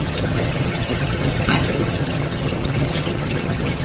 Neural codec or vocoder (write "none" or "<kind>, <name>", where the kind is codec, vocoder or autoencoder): vocoder, HiFi-GAN